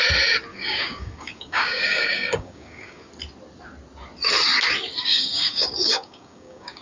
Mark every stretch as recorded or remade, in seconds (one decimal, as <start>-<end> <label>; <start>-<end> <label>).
0.0-0.5 recorded; 0.5-3.1 remade; 3.1-5.0 recorded; 5.0-6.8 remade